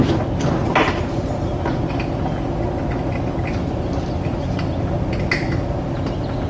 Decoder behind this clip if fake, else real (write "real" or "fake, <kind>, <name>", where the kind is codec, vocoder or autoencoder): real